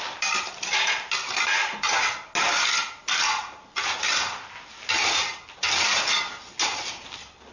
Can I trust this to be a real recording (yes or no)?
yes